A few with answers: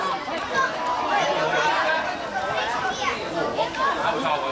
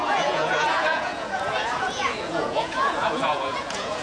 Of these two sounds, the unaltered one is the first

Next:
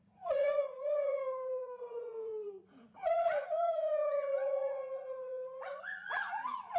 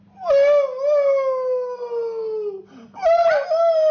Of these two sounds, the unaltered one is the second